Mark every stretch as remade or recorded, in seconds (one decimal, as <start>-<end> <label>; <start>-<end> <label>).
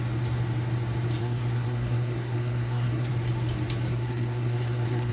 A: 0.0-1.2 recorded; 1.2-3.1 remade; 3.1-3.9 recorded; 3.9-5.1 remade